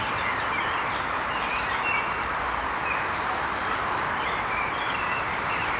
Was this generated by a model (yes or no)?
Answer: yes